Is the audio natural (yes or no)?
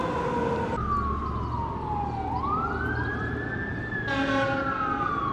yes